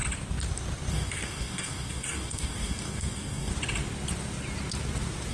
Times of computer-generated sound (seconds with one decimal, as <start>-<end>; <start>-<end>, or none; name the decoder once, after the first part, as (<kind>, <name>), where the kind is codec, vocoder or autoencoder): 0.9-3.5 (codec, DAC)